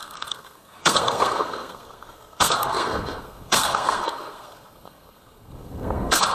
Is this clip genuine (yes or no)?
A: no